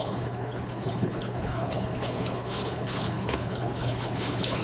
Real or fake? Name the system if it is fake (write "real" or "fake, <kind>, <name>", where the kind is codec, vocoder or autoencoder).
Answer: fake, codec, HILCodec